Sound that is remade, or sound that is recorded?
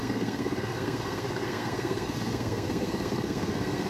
remade